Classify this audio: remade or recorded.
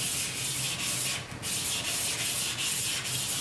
recorded